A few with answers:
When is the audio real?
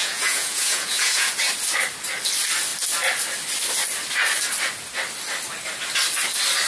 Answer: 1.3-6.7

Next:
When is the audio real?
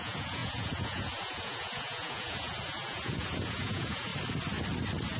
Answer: 4.1-5.2